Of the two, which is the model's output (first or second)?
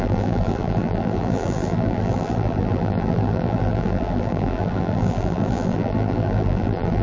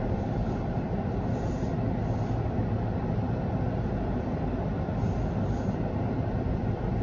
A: first